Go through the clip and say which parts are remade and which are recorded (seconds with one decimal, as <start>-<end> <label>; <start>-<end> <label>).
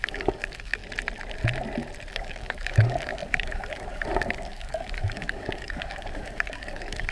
0.0-0.8 remade; 0.8-2.1 recorded; 2.1-7.1 remade